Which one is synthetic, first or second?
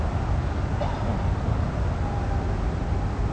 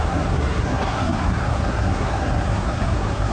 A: second